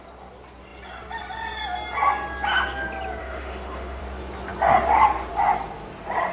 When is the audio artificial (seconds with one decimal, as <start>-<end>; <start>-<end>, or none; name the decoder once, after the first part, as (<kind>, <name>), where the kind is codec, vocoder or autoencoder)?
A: 3.2-4.0 (autoencoder, DAC-VAE)